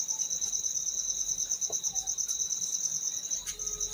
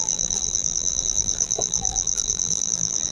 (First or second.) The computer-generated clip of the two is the second